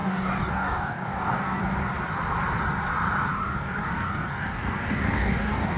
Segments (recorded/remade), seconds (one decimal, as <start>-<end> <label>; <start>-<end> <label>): 0.0-1.6 remade; 1.6-3.3 recorded; 3.3-5.8 remade